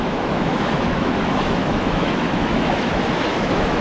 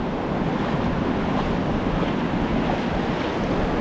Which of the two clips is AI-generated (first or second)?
first